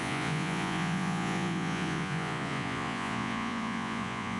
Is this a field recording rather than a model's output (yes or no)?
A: no